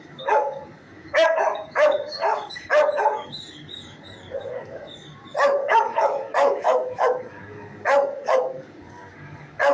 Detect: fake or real fake